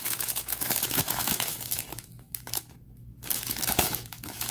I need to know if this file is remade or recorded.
remade